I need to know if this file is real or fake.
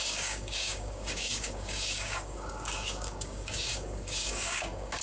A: fake